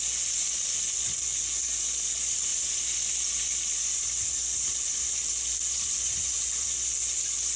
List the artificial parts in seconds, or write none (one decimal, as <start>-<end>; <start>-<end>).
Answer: none